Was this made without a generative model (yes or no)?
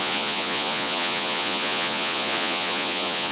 no